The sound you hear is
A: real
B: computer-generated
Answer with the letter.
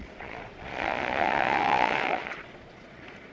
B